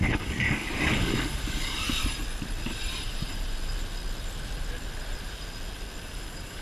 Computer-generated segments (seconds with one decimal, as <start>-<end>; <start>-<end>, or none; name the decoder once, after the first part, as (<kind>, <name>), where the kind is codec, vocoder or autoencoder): 0.0-2.0 (codec, DAC); 6.0-6.6